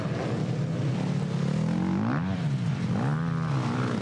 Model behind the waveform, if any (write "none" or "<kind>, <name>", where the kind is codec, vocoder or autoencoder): none